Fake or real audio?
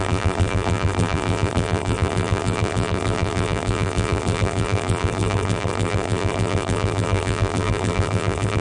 fake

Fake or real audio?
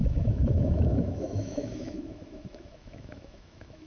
fake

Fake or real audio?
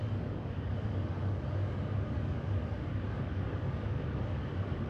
fake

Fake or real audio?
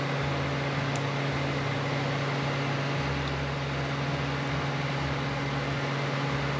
real